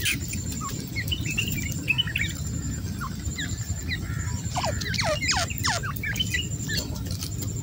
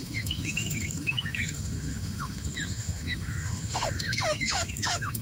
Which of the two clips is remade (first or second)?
second